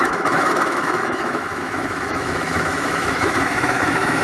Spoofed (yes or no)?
yes